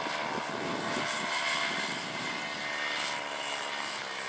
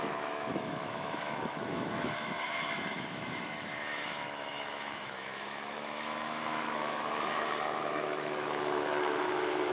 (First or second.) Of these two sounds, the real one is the first